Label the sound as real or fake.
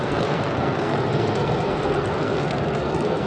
fake